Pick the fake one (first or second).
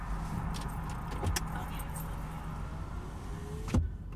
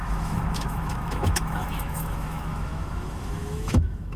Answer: second